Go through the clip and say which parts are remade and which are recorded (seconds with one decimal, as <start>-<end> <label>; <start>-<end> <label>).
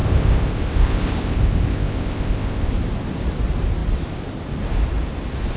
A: 0.0-2.7 remade; 2.7-5.6 recorded